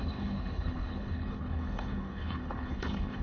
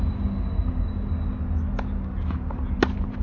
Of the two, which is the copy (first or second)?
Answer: first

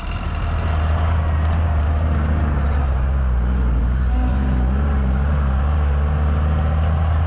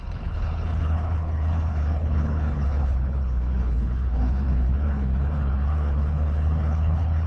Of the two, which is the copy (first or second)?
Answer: second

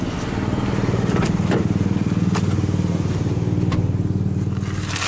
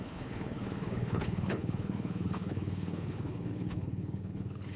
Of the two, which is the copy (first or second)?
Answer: second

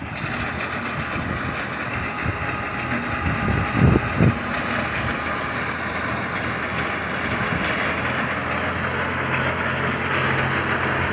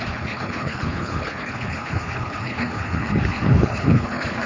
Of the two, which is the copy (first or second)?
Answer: second